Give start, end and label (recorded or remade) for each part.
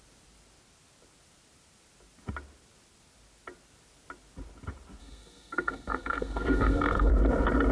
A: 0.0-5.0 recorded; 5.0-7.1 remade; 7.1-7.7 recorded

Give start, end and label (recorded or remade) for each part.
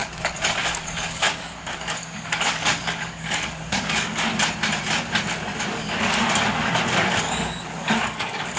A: 0.0-4.3 remade; 4.3-5.6 recorded; 5.6-8.6 remade